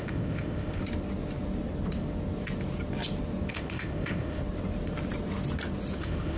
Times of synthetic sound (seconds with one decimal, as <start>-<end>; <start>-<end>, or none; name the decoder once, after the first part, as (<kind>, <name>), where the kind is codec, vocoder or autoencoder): 0.0-0.8 (codec, ZipCodec); 3.5-4.4; 6.0-6.4